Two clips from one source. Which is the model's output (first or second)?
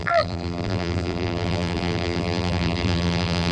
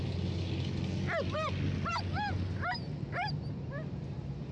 first